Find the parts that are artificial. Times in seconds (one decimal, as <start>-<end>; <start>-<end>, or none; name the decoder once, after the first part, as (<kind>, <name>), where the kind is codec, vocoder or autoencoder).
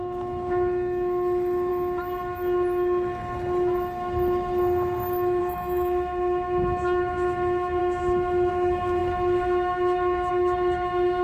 0.0-1.7 (autoencoder, DAC-VAE); 5.4-7.8; 8.5-11.2